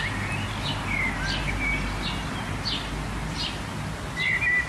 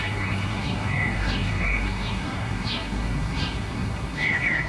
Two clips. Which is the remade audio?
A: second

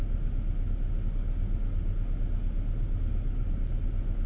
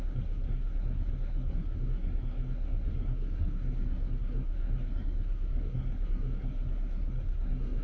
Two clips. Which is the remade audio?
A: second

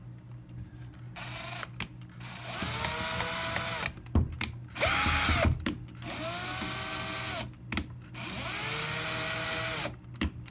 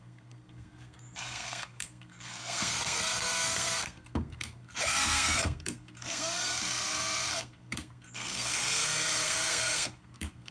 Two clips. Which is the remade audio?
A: second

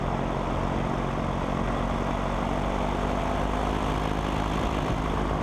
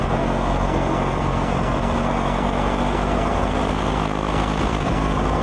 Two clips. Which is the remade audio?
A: second